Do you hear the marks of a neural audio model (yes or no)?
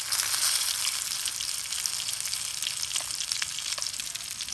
no